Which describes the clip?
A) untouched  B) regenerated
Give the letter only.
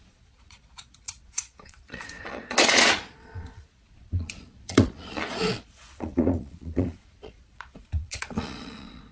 B